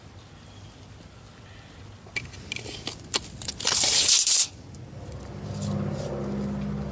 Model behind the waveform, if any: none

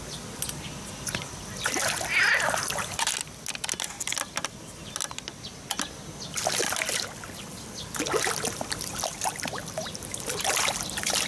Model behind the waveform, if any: none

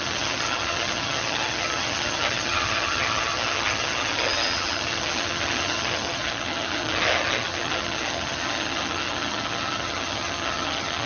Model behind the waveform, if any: vocoder, HiFi-GAN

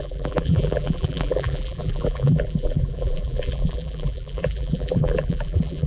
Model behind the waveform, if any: vocoder, BigVGAN v2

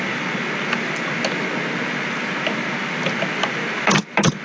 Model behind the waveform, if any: none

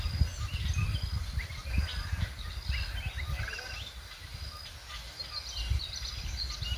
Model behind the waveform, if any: none